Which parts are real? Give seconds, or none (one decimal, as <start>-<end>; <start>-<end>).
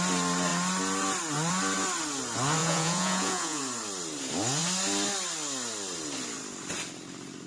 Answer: 0.0-2.6; 3.6-7.5